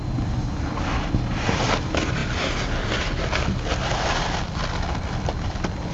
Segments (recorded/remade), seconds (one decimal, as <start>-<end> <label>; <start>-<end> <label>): 0.0-5.9 recorded

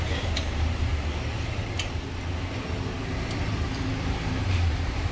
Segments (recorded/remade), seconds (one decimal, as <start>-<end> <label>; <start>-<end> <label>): 0.0-0.9 remade; 0.9-3.9 recorded; 3.9-5.1 remade

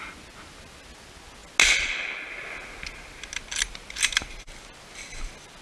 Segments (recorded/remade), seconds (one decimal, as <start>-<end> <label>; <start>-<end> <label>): 0.0-5.6 recorded

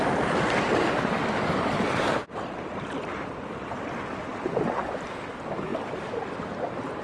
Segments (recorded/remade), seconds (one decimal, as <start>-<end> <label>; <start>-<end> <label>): 0.0-7.0 recorded